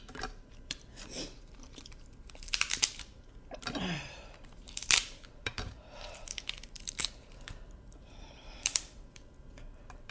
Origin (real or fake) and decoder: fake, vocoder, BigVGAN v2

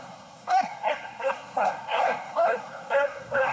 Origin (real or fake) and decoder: fake, codec, SNAC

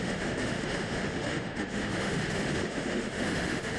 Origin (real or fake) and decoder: fake, autoencoder, DAC-VAE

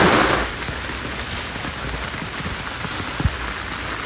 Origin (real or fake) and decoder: real